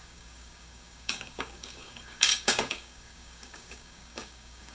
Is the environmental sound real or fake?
fake